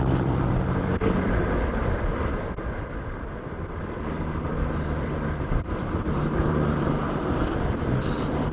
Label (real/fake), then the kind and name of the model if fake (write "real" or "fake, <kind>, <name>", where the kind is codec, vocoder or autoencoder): fake, vocoder, BigVGAN v2